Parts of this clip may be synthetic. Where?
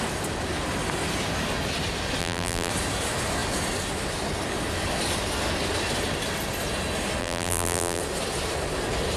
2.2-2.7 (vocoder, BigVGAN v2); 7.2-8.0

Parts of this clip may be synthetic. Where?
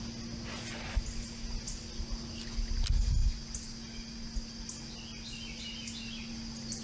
none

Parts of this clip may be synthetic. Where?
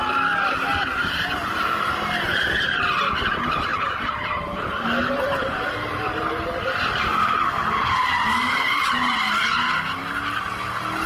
0.7-3.1 (vocoder, BigVGAN v2); 3.7-4.8